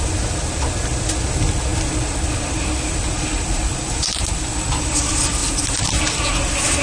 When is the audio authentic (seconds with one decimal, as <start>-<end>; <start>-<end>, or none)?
0.0-6.8